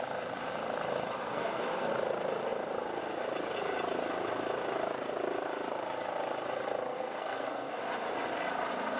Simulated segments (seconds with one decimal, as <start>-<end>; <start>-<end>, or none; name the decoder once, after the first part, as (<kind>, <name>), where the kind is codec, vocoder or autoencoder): 1.2-1.9 (codec, SNAC); 6.9-7.8